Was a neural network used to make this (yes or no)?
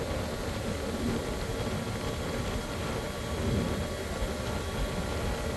no